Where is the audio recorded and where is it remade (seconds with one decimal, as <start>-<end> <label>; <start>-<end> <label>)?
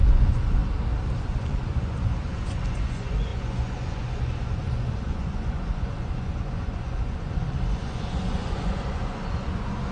0.0-0.6 remade; 0.6-1.2 recorded; 1.2-9.9 remade